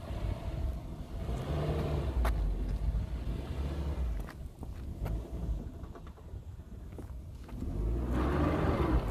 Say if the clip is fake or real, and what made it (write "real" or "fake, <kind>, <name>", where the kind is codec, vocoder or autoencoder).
real